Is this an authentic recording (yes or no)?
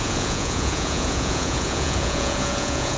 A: no